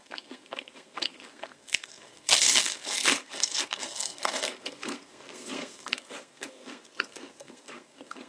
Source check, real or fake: fake